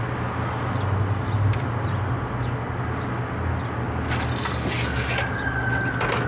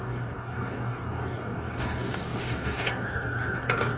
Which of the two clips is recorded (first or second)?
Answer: first